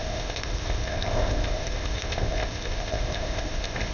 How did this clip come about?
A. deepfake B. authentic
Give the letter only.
A